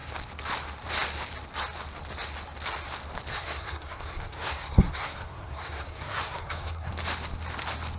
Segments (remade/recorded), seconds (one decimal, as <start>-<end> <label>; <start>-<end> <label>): 0.0-3.3 recorded; 3.3-6.9 remade; 6.9-8.0 recorded